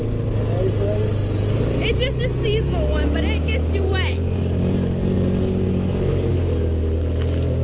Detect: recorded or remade recorded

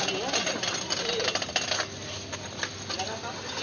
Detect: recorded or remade recorded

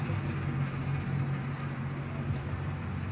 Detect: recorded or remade recorded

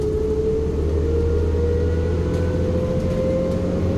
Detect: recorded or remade recorded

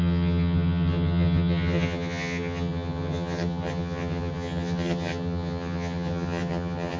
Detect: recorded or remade remade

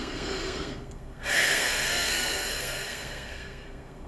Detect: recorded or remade remade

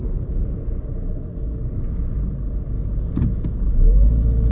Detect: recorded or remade recorded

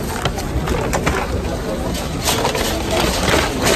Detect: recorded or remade recorded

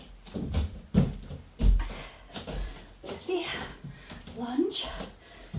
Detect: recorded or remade remade